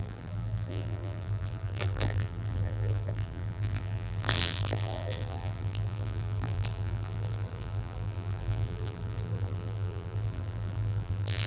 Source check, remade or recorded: remade